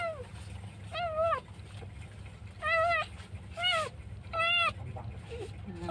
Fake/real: real